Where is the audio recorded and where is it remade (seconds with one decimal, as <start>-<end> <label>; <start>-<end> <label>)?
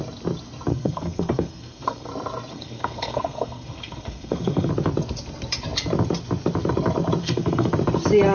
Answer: 0.0-0.7 recorded; 0.7-2.1 remade; 2.1-2.5 recorded; 2.5-4.7 remade; 4.7-7.2 recorded; 7.2-7.7 remade; 7.7-8.3 recorded